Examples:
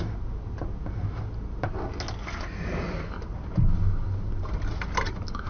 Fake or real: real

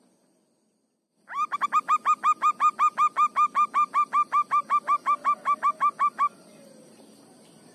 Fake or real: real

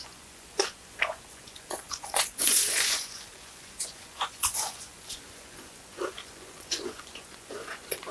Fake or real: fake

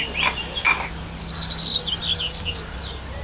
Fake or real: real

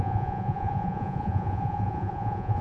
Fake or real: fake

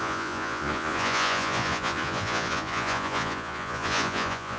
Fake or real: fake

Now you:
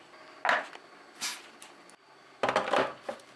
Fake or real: real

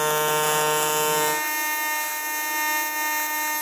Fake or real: real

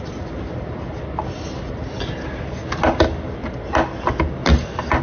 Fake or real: real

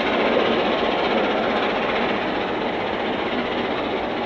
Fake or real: real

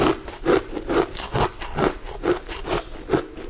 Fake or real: real